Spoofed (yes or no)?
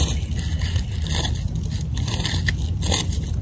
no